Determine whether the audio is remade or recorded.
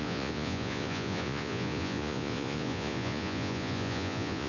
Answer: remade